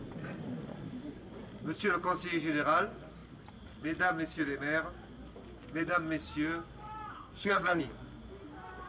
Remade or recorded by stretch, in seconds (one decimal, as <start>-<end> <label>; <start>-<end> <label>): 0.0-7.1 recorded; 7.1-7.8 remade; 7.8-8.9 recorded